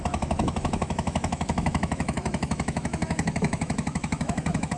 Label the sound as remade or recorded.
remade